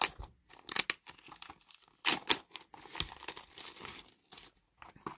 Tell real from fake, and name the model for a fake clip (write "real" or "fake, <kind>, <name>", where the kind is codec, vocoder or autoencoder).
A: real